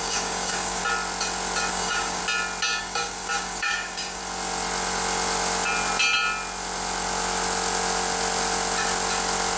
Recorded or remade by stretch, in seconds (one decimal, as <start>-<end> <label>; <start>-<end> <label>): 0.0-0.8 remade; 0.8-1.7 recorded; 1.7-2.2 remade; 2.2-2.8 recorded; 2.8-4.2 remade; 4.2-9.6 recorded